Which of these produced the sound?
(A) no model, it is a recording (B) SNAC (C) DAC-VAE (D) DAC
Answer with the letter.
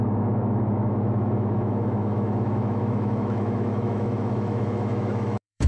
C